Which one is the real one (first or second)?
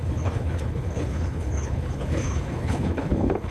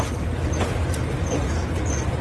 second